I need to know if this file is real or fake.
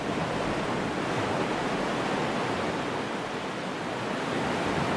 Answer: real